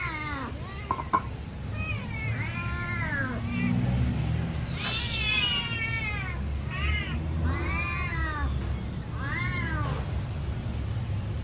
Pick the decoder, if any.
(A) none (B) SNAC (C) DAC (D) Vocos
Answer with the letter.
A